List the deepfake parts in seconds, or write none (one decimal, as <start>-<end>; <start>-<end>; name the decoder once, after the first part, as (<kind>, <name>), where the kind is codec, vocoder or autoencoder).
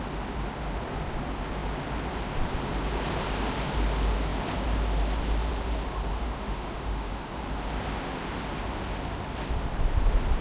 6.1-7.4 (autoencoder, DAC-VAE)